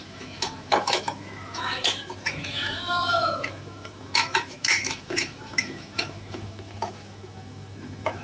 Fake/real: fake